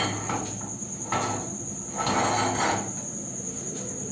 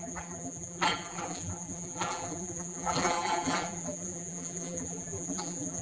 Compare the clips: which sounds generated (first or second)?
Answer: second